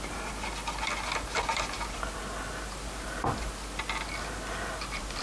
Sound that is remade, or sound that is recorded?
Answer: recorded